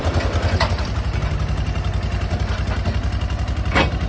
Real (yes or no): yes